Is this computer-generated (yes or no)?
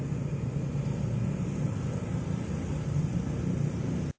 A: no